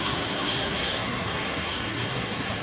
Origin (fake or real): fake